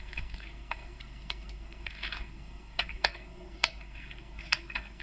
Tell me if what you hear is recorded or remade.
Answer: remade